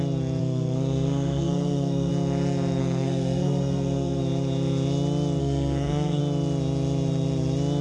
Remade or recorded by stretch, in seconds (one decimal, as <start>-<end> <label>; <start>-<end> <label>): 0.0-0.4 recorded; 0.4-2.1 remade; 2.1-2.8 recorded; 2.8-4.2 remade; 4.2-5.4 recorded; 5.4-6.2 remade; 6.2-7.8 recorded